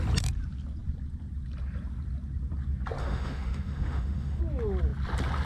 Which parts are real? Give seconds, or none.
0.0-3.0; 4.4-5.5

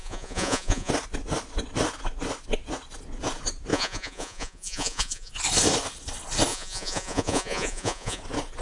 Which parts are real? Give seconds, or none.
0.9-3.7; 5.3-6.5; 8.2-8.6